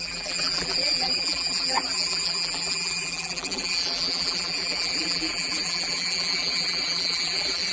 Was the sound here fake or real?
fake